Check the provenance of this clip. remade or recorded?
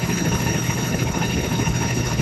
remade